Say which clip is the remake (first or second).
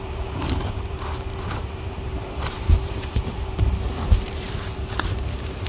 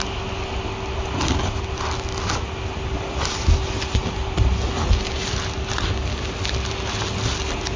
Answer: first